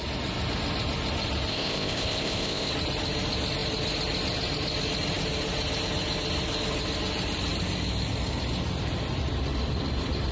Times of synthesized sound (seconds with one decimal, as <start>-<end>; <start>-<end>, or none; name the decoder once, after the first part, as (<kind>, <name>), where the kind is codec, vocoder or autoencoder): 1.5-2.7 (codec, ZipCodec)